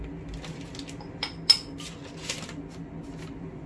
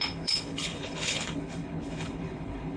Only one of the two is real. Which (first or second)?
first